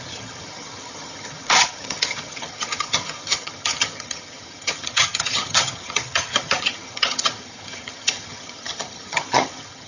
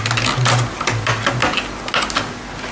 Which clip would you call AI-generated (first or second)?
first